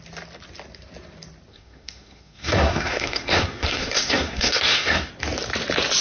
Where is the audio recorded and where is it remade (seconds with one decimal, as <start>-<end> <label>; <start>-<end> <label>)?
0.0-1.5 recorded; 1.5-5.1 remade; 5.1-6.0 recorded